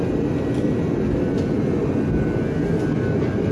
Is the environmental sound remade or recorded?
recorded